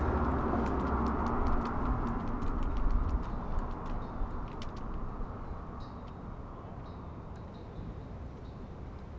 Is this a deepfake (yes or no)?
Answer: no